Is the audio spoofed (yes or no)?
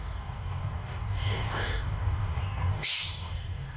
yes